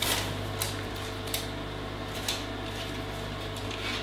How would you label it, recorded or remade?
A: recorded